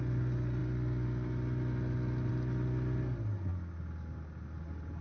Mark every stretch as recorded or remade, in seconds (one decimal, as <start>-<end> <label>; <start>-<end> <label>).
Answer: 0.0-5.0 recorded

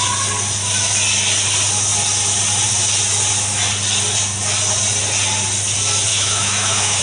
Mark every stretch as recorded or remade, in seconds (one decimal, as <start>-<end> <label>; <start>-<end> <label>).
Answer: 0.0-6.1 recorded; 6.1-7.0 remade

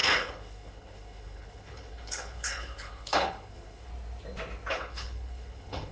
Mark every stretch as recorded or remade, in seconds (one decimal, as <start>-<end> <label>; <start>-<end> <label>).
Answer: 0.0-3.9 remade; 3.9-4.7 recorded; 4.7-5.9 remade

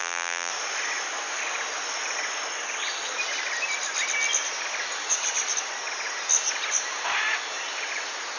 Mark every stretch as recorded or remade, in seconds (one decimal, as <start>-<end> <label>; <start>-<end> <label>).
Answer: 0.0-0.5 remade; 0.5-8.4 recorded